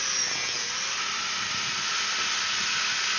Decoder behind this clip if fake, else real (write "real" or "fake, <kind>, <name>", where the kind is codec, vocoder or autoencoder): real